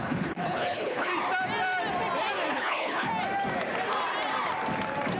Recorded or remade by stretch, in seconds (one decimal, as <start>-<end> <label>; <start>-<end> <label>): 0.0-1.1 remade; 1.1-2.5 recorded; 2.5-3.1 remade; 3.1-5.2 recorded